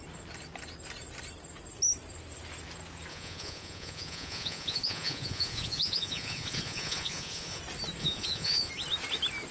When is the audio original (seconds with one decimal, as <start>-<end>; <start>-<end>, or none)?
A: 0.0-3.1; 7.6-8.0; 8.7-9.5